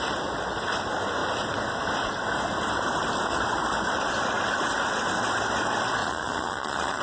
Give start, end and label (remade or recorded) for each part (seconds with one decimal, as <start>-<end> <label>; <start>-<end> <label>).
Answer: 0.0-6.0 recorded; 6.0-7.0 remade